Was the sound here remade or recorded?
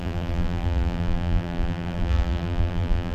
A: remade